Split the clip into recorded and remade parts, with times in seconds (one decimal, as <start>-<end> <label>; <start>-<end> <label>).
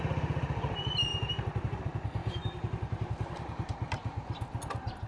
0.0-1.1 recorded; 1.1-1.8 remade; 1.8-2.2 recorded; 2.2-4.6 remade; 4.6-5.1 recorded